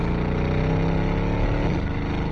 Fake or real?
real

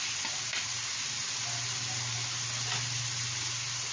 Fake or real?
real